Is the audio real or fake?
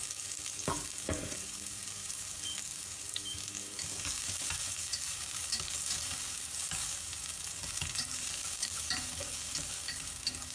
fake